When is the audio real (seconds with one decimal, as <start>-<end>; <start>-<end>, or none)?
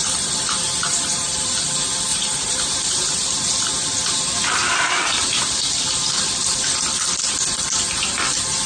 1.7-2.1; 5.1-8.7